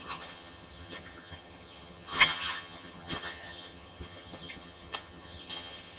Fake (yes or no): yes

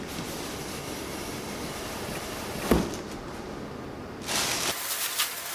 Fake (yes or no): no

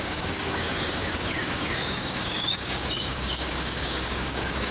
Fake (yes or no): yes